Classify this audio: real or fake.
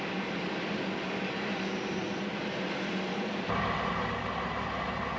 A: real